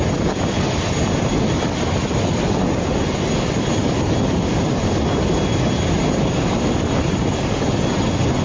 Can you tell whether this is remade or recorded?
recorded